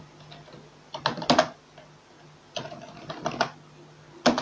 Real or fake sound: real